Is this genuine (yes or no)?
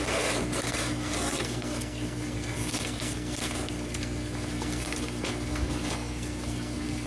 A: no